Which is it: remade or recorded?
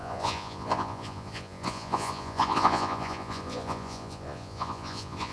remade